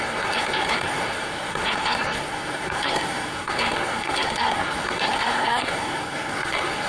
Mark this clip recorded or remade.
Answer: remade